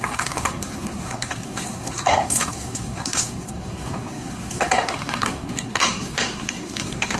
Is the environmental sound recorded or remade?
remade